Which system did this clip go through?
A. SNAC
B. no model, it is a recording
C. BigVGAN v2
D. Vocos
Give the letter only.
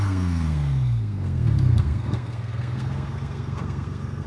A